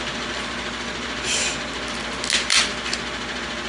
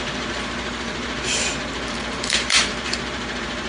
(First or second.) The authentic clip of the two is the first